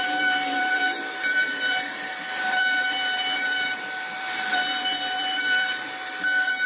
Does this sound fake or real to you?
fake